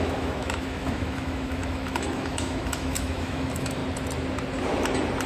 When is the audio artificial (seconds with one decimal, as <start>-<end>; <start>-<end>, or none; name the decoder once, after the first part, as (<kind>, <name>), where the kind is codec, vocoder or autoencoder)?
0.0-3.8 (autoencoder, DAC-VAE)